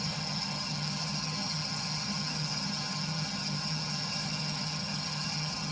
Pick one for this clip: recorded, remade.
remade